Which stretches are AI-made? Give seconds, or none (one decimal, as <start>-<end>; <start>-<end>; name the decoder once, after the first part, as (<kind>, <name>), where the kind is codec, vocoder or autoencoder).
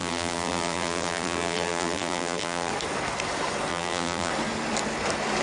0.0-2.7 (vocoder, BigVGAN v2); 3.7-4.3